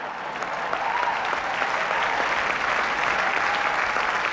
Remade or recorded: recorded